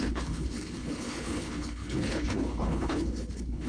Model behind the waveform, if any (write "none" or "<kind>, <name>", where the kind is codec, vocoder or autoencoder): codec, HILCodec